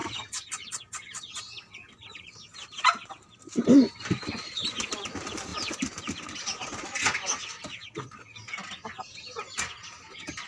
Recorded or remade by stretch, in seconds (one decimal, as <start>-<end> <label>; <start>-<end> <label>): 0.0-10.5 recorded